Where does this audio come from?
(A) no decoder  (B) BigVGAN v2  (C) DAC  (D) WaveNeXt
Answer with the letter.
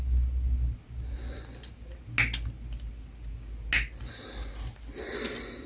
A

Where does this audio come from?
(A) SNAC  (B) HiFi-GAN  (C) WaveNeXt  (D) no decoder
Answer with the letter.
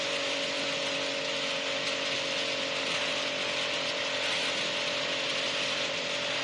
D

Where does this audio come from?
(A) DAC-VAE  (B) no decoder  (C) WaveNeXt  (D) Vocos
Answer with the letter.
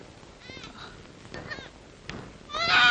B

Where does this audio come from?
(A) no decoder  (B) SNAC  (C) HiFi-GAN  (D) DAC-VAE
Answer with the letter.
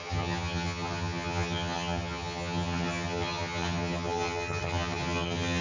C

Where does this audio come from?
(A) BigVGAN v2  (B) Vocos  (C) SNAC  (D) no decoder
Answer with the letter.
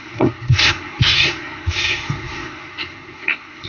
C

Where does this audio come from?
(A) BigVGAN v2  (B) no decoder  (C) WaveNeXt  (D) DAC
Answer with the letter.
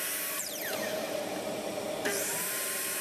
A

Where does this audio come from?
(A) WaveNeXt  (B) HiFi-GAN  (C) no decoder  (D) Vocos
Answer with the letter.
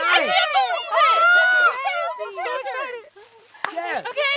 C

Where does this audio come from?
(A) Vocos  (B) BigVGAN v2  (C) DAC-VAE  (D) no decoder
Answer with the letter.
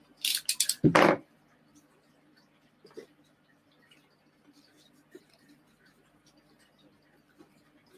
D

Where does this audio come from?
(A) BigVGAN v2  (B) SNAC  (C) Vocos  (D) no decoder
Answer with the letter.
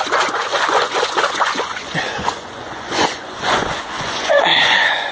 C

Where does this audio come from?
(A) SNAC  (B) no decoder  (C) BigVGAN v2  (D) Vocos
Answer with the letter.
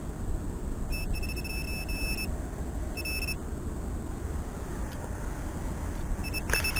B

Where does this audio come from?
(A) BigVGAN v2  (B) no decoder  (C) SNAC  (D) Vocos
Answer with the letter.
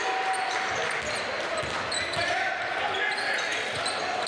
B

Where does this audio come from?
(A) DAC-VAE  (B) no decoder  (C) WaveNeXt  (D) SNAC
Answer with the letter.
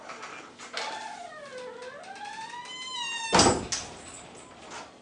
B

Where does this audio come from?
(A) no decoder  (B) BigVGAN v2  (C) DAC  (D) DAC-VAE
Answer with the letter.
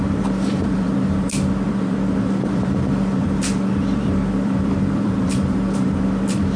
B